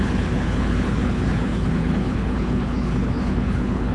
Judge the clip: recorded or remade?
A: remade